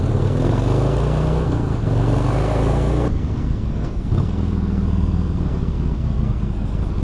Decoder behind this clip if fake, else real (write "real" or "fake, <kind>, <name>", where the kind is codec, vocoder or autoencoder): fake, codec, SNAC